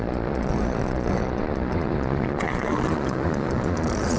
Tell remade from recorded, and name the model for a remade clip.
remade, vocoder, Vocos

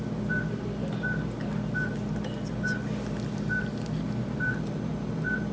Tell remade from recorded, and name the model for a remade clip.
recorded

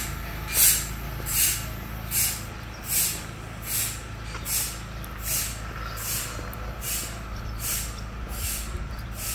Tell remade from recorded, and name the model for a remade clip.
recorded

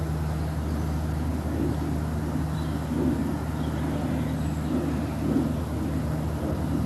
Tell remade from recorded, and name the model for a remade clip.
recorded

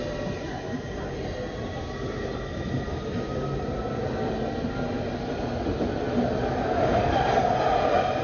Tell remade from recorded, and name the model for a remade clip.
recorded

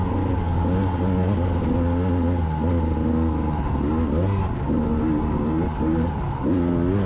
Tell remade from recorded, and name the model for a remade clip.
recorded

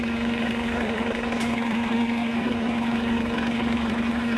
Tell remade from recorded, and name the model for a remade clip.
remade, codec, SNAC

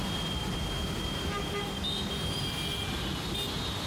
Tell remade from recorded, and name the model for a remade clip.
recorded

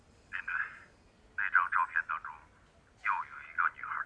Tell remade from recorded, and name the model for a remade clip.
recorded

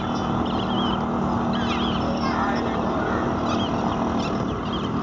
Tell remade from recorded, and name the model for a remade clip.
recorded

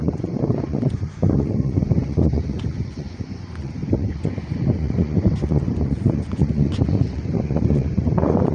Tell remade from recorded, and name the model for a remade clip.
remade, vocoder, Vocos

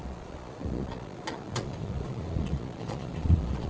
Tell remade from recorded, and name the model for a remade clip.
remade, vocoder, Vocos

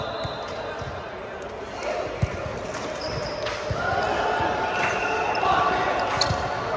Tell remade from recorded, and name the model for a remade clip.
recorded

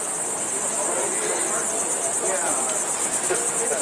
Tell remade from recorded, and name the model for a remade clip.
recorded